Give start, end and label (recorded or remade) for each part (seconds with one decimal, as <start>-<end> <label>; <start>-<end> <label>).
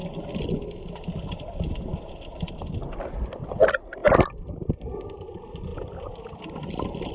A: 0.0-7.1 recorded